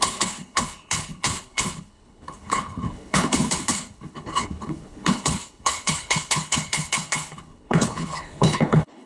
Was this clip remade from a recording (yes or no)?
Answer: yes